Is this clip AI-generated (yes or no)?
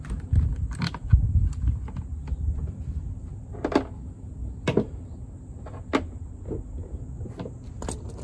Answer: no